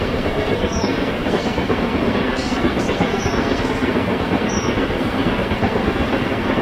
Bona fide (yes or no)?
no